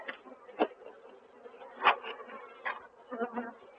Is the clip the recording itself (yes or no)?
yes